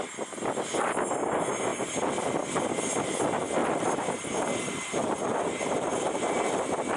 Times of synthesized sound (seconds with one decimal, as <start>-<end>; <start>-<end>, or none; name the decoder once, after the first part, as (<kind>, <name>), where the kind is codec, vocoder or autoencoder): 3.6-7.0 (vocoder, BigVGAN v2)